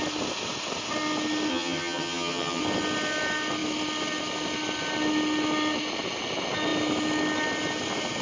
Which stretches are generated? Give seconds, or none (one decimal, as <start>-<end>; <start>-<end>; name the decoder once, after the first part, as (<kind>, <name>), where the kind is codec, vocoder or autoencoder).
1.5-2.6 (vocoder, HiFi-GAN)